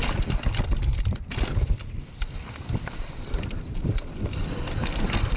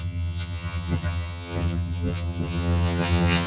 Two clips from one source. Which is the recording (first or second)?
first